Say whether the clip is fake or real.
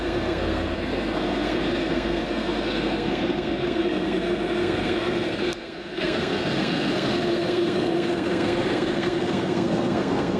fake